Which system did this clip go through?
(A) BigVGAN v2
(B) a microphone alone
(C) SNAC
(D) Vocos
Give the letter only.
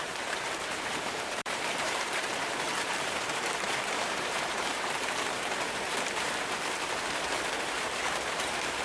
A